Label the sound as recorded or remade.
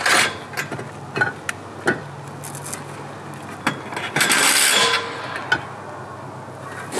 recorded